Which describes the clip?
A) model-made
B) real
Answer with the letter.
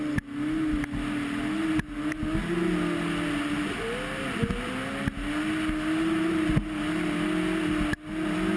B